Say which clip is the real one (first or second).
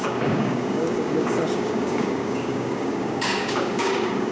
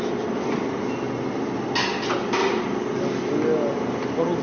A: second